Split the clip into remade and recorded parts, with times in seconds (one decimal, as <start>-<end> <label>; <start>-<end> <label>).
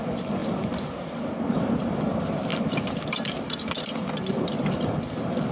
0.0-5.5 remade